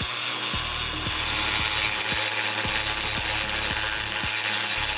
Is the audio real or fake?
real